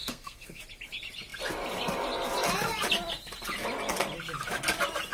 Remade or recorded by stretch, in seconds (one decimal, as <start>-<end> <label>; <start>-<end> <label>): 0.0-0.6 remade; 0.6-5.1 recorded